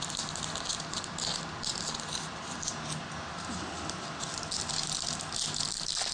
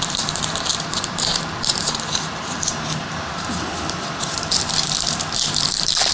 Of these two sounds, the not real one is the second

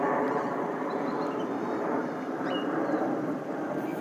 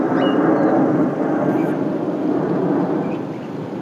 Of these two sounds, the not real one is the first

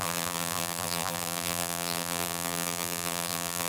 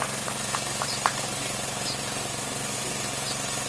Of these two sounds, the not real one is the first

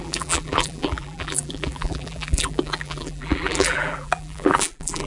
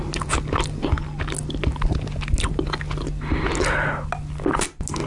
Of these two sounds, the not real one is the first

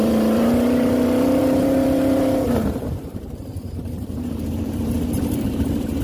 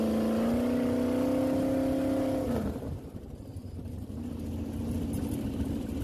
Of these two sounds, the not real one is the first